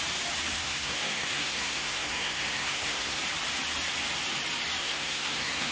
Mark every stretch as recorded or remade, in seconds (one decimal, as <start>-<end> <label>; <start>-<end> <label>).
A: 0.0-0.6 recorded; 0.6-3.2 remade; 3.2-4.8 recorded; 4.8-5.7 remade

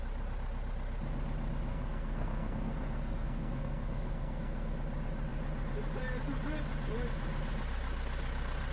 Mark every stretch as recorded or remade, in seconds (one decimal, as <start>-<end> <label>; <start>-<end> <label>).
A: 0.0-1.7 recorded; 1.7-4.7 remade; 4.7-8.7 recorded

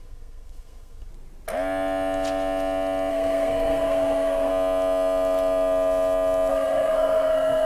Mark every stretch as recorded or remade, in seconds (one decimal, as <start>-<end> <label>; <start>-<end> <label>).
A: 0.0-1.1 remade; 1.1-3.1 recorded; 3.1-4.5 remade; 4.5-6.5 recorded; 6.5-7.6 remade

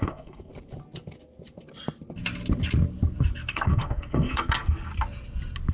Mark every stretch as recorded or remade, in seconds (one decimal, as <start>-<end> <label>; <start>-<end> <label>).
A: 0.0-0.5 remade; 0.5-3.5 recorded; 3.5-4.9 remade; 4.9-5.7 recorded

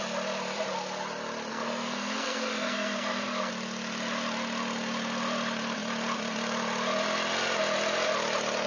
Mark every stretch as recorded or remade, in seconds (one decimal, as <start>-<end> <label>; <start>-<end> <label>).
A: 0.0-1.5 recorded; 1.5-3.5 remade; 3.5-8.7 recorded

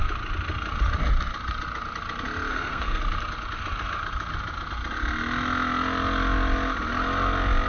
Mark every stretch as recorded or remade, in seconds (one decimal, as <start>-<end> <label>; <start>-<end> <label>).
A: 0.0-2.5 recorded; 2.5-3.0 remade; 3.0-7.7 recorded

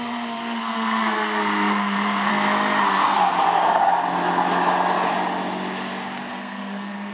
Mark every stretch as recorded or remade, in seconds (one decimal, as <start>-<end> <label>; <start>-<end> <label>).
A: 0.0-2.3 remade; 2.3-6.3 recorded; 6.3-7.1 remade

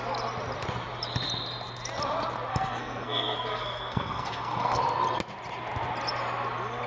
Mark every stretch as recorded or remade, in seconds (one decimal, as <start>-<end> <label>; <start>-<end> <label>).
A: 0.0-2.5 recorded; 2.5-4.8 remade; 4.8-6.9 recorded